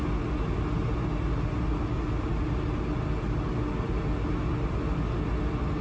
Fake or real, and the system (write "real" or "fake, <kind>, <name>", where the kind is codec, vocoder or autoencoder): real